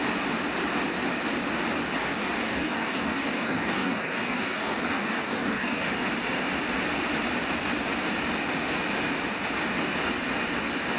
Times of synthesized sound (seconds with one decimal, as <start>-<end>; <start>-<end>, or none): 2.0-5.9